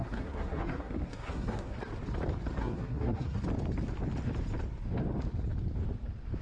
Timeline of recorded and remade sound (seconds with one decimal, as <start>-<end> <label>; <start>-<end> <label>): 0.0-1.8 remade; 1.8-2.6 recorded; 2.6-3.4 remade; 3.4-6.4 recorded